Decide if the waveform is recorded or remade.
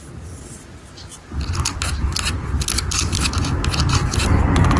recorded